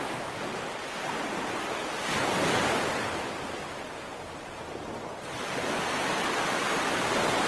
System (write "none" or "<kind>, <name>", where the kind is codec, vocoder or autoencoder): none